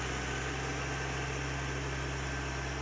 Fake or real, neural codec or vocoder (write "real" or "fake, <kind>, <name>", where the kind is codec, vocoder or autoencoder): real